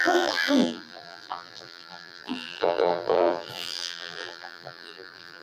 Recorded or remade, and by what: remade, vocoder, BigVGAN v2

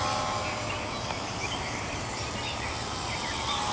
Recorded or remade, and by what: remade, vocoder, BigVGAN v2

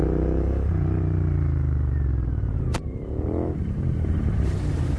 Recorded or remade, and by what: remade, vocoder, BigVGAN v2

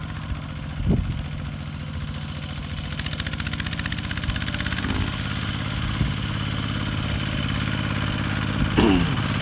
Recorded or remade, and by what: recorded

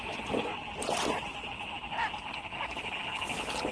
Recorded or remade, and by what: recorded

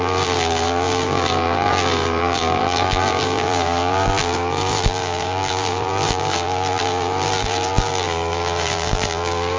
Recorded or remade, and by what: remade, vocoder, BigVGAN v2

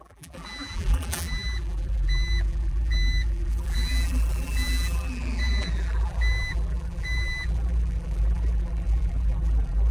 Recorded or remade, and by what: remade, vocoder, BigVGAN v2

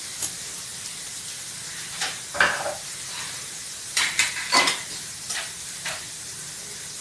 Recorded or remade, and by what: remade, vocoder, BigVGAN v2